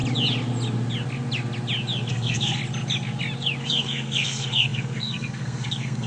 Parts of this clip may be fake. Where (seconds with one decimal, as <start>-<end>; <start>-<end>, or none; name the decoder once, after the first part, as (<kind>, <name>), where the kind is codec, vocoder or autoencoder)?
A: 2.1-2.6 (codec, SNAC); 3.6-6.1